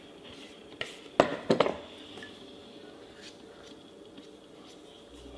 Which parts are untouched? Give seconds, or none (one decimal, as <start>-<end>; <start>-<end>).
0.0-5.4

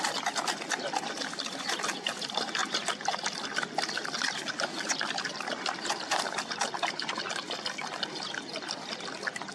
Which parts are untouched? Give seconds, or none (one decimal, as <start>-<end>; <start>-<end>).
0.0-9.5

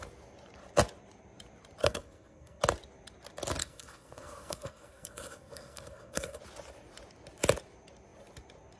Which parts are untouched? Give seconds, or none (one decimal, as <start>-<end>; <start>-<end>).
0.0-1.8; 2.6-3.6; 6.4-8.8

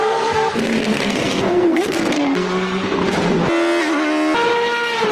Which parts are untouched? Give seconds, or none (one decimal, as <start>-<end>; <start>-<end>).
3.0-5.1